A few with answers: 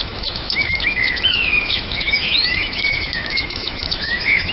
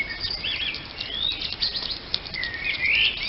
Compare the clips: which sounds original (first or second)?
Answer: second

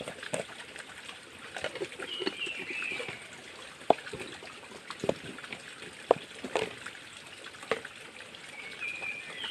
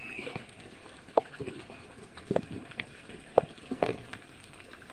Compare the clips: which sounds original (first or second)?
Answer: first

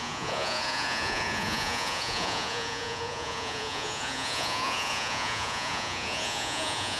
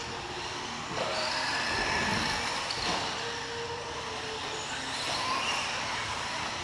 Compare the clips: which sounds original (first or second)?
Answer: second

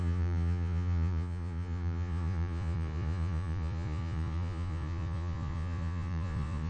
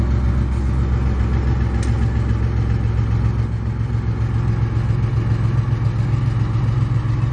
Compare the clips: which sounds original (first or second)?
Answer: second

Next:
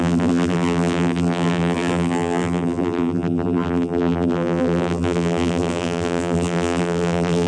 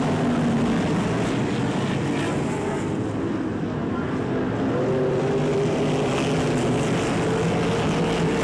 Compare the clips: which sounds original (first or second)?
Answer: second